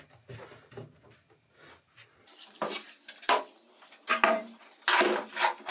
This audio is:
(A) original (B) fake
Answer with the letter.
A